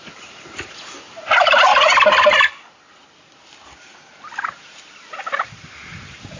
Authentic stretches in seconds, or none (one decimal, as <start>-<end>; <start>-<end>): 1.7-4.6